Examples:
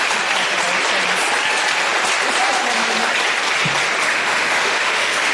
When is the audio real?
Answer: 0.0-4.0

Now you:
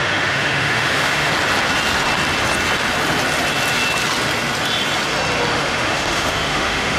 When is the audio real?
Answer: 1.3-5.5

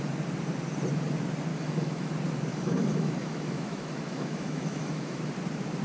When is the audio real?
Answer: 0.0-1.5; 2.1-2.5; 5.2-5.8

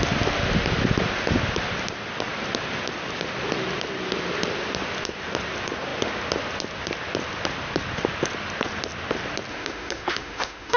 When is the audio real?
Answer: 0.0-9.5

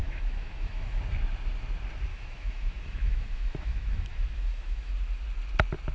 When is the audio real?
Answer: 1.0-2.1; 4.9-5.9